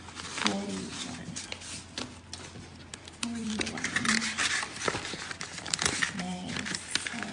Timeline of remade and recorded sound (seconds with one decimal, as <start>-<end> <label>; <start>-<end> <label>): 0.0-0.9 recorded; 0.9-1.5 remade; 1.5-2.9 recorded; 2.9-4.8 remade; 4.8-7.3 recorded